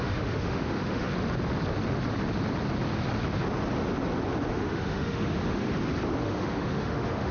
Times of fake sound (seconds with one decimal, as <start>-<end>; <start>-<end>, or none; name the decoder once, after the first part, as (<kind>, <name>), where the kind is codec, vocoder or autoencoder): 0.0-1.1 (autoencoder, DAC-VAE); 4.5-5.6; 6.2-7.3